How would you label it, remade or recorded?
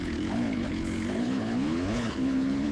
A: remade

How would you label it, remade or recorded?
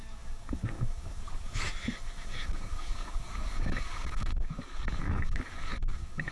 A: remade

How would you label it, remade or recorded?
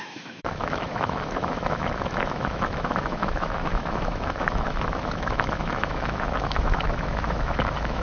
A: remade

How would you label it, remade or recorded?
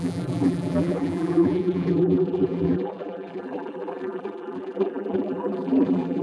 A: remade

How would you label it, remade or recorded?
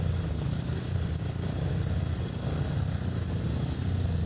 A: recorded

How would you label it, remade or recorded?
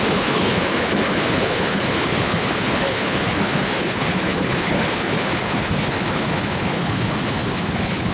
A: remade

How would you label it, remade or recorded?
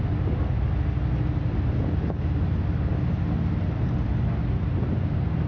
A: recorded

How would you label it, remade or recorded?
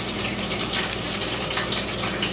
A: recorded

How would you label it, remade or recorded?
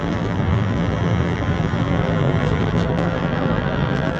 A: remade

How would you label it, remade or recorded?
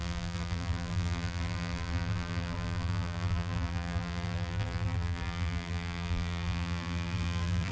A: remade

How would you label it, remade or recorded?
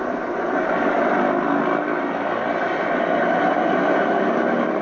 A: recorded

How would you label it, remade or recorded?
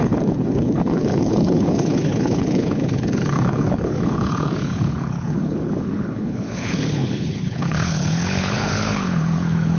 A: remade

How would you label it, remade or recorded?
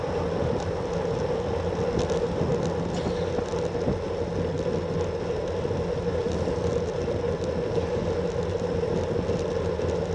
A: recorded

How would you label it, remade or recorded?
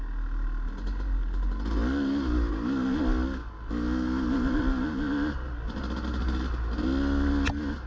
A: recorded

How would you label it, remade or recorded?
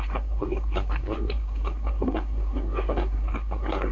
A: remade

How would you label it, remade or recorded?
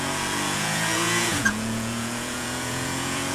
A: remade